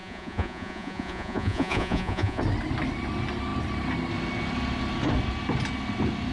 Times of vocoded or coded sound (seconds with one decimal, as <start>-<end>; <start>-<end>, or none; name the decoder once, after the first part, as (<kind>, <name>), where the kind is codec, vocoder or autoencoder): 0.0-2.4 (vocoder, Vocos)